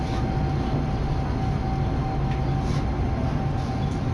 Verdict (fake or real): real